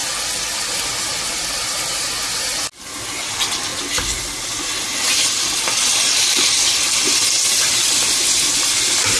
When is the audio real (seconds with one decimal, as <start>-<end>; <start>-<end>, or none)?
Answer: 0.0-9.2